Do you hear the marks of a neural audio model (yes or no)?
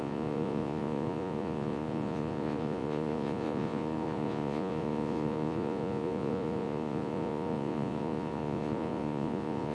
yes